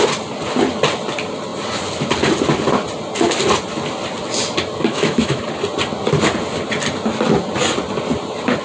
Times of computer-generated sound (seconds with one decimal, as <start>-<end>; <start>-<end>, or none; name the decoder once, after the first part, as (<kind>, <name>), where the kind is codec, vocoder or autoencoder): 4.9-5.4 (autoencoder, DAC-VAE)